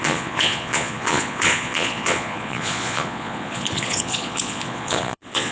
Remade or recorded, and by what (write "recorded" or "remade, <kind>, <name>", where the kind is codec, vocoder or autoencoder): remade, vocoder, Vocos